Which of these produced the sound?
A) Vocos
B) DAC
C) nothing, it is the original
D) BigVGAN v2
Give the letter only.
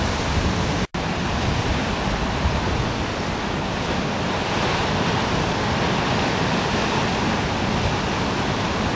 C